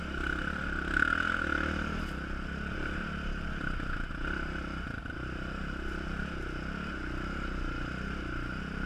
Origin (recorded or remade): recorded